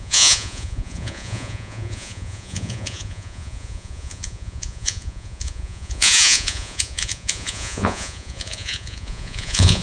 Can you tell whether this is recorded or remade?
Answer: remade